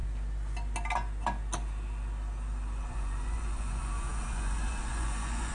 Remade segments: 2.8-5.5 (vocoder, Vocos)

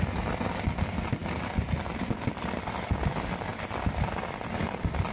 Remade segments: none